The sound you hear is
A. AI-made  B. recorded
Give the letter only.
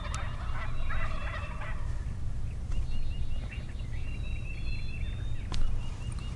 B